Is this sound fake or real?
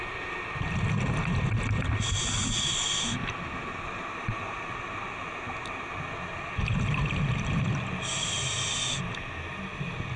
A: real